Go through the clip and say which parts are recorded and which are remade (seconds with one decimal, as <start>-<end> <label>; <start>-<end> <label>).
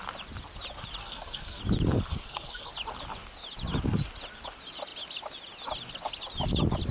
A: 0.0-1.0 recorded; 1.0-1.6 remade; 1.6-2.1 recorded; 2.1-2.7 remade; 2.7-6.9 recorded